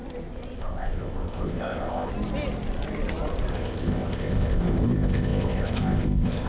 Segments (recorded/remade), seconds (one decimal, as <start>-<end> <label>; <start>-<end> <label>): 0.0-0.6 recorded; 0.6-2.1 remade; 2.1-3.5 recorded; 3.5-6.5 remade